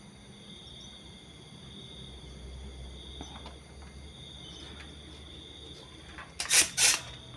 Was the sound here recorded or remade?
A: recorded